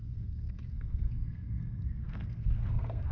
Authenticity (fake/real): fake